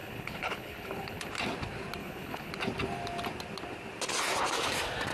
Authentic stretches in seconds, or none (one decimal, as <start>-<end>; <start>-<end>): 1.3-2.0; 2.5-5.1